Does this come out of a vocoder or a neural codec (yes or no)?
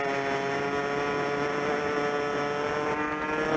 no